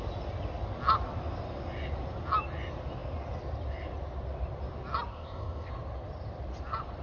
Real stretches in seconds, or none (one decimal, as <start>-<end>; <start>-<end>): 0.0-5.1; 5.7-7.0